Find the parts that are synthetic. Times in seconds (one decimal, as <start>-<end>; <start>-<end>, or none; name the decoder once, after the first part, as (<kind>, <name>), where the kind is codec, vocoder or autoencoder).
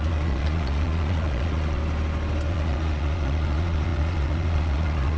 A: 0.0-1.8 (vocoder, Vocos); 2.5-5.2